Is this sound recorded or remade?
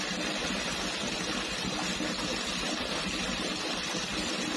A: recorded